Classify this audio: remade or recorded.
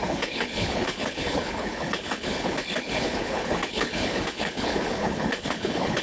remade